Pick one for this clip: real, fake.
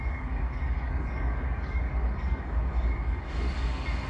fake